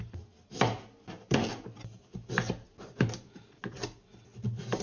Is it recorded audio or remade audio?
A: recorded